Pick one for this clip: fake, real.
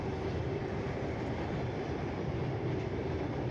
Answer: real